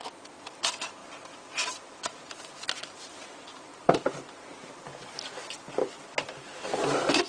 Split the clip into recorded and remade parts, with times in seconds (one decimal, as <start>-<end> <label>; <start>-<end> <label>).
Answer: 0.0-1.0 recorded; 1.0-2.8 remade; 2.8-3.7 recorded; 3.7-4.7 remade; 4.7-7.3 recorded